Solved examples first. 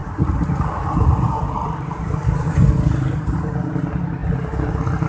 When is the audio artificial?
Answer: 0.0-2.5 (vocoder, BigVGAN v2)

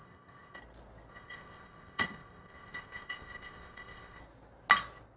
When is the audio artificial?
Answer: 0.0-0.6 (codec, ZipCodec); 1.1-4.2

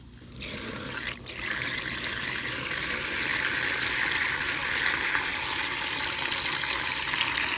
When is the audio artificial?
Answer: none

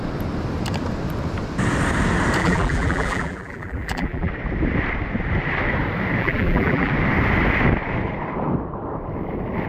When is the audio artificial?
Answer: 2.4-4.3 (vocoder, BigVGAN v2); 6.2-6.9

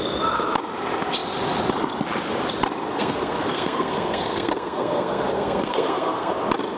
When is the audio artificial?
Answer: 2.9-6.3 (codec, SNAC)

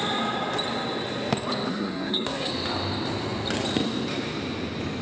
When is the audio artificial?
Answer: 1.7-2.5 (codec, SNAC)